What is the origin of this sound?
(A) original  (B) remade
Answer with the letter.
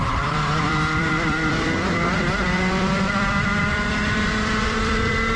B